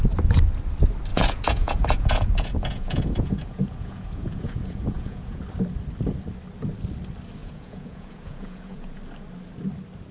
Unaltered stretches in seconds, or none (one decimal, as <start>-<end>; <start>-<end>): 0.0-1.1; 5.4-7.4; 9.0-10.1